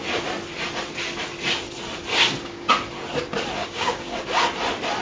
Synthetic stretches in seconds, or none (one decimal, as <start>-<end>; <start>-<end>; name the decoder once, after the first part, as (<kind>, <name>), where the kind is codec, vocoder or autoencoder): 2.1-2.7 (codec, DAC); 3.6-4.2